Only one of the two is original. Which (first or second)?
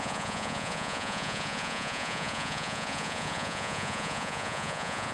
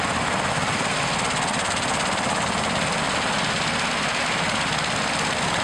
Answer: second